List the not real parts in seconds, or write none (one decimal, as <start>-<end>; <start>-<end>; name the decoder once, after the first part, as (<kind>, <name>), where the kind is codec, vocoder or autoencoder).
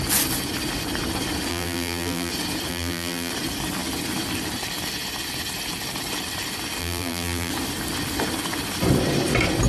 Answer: 1.5-2.3 (vocoder, BigVGAN v2); 2.7-3.3; 6.8-7.5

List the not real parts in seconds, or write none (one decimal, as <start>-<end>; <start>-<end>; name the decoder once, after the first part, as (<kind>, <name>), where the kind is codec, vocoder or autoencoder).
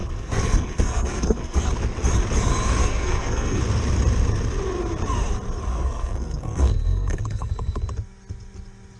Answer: 0.0-1.7 (codec, SNAC); 2.8-3.6; 5.7-7.8